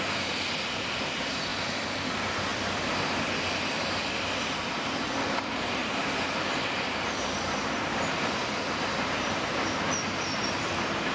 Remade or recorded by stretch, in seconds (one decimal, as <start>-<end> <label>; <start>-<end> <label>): 0.0-5.8 remade; 5.8-6.7 recorded; 6.7-11.1 remade